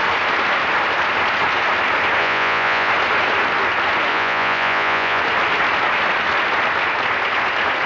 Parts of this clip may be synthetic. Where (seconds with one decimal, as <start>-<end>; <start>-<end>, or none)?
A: 2.2-2.9; 4.1-5.2